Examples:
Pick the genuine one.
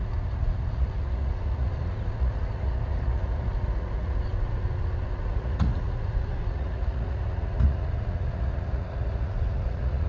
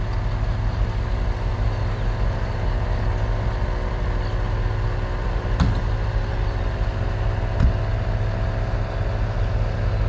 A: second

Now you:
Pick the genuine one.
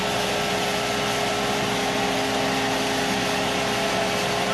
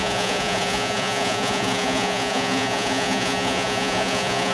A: first